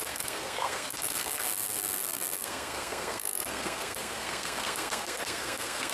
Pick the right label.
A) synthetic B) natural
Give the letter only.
A